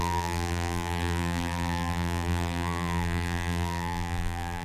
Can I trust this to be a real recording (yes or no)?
no